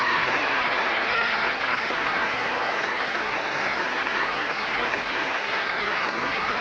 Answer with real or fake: fake